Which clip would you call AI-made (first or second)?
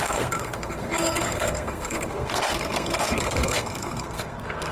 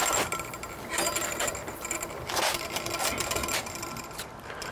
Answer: first